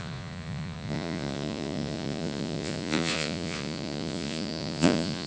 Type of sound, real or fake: fake